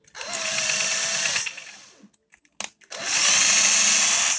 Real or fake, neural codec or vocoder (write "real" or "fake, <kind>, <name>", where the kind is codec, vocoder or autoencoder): real